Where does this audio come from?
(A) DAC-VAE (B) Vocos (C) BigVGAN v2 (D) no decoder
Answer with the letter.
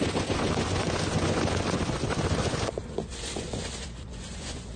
B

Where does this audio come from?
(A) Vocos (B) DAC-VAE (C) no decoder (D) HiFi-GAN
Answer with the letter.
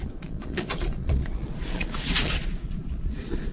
A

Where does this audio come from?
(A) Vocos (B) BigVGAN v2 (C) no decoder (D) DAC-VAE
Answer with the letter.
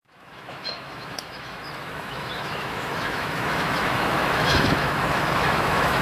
D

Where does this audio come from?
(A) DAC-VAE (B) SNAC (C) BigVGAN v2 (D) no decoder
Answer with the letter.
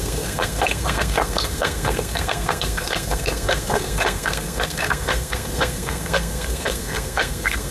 B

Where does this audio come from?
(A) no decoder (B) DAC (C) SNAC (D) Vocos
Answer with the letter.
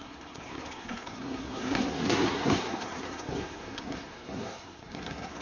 C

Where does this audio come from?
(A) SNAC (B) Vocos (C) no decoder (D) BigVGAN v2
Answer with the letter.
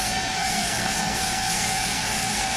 A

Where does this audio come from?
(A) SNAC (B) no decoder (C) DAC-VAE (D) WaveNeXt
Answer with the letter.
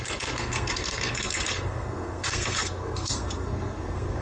A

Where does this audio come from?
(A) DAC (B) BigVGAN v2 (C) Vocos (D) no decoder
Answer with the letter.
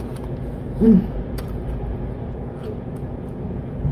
C